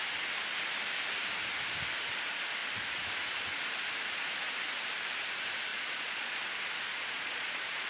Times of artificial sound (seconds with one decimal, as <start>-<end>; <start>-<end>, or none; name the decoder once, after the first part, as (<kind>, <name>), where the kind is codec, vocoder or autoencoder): 5.7-6.4 (vocoder, Vocos); 6.9-7.9